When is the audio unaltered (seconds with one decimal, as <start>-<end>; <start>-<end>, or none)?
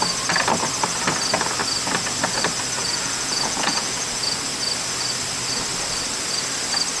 0.0-2.8; 4.4-7.0